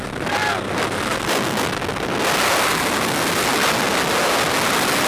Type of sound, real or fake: real